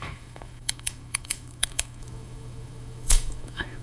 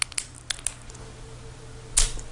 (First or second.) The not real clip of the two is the first